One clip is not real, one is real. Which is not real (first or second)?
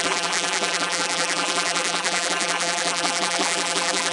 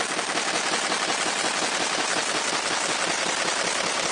first